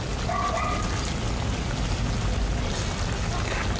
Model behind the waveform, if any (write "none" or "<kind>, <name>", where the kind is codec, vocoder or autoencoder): none